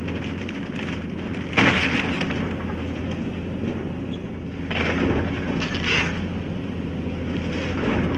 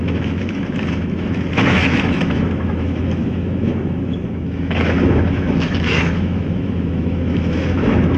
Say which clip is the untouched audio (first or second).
first